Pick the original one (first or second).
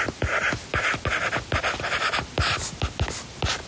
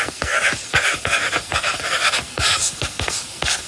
first